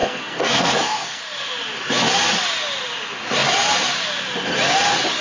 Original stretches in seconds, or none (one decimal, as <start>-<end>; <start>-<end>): 1.2-5.2